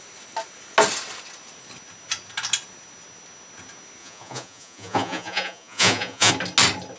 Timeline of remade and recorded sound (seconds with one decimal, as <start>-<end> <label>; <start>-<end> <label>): 0.0-4.0 recorded; 4.0-6.3 remade; 6.3-7.0 recorded